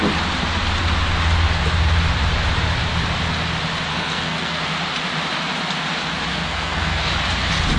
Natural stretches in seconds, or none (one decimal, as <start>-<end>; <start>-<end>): 0.0-3.9; 4.6-6.3; 7.1-7.8